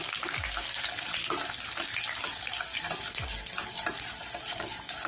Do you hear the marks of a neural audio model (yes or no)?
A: no